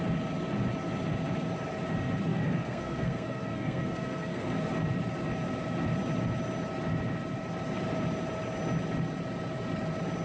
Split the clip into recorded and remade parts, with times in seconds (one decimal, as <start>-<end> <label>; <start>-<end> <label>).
0.0-2.3 recorded; 2.3-4.6 remade; 4.6-10.2 recorded